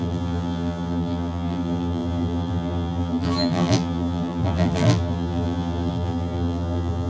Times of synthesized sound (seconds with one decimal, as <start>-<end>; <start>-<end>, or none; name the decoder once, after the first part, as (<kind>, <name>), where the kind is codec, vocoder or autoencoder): 0.0-7.1 (vocoder, BigVGAN v2)